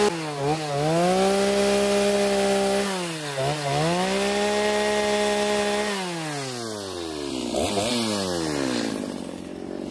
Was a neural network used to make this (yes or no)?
no